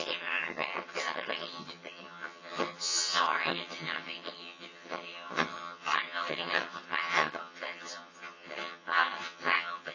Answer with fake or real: fake